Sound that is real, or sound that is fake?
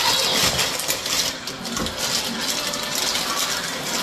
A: real